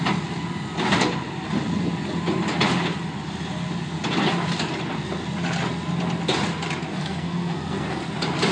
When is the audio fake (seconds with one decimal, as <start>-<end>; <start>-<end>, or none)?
6.9-8.0